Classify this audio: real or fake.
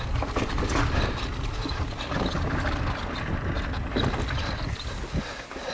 real